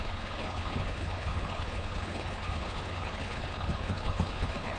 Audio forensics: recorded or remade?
remade